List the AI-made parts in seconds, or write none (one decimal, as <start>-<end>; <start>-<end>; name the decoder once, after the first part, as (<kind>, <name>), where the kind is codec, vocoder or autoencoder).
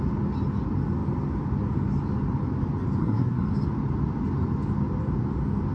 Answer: 3.0-3.5 (codec, SNAC)